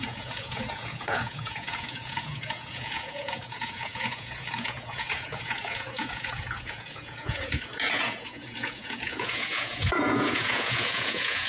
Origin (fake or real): fake